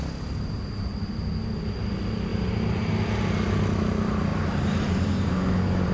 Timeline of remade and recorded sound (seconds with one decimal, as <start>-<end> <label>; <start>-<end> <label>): 0.0-2.3 recorded; 2.3-2.9 remade; 2.9-4.3 recorded; 4.3-5.3 remade; 5.3-5.9 recorded